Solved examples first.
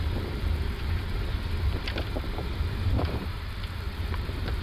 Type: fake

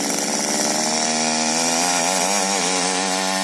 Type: real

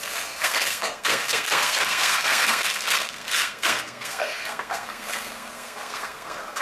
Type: fake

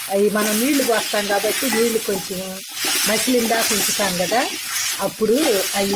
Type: real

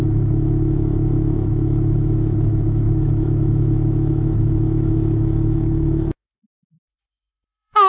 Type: fake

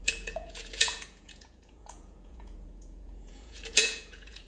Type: fake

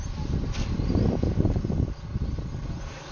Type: real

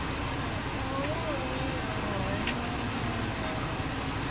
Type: real